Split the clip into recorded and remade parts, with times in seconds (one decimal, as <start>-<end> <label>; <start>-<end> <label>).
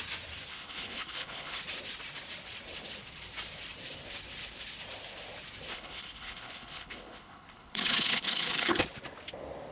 0.0-0.5 recorded; 0.5-1.6 remade; 1.6-5.7 recorded; 5.7-8.8 remade; 8.8-9.7 recorded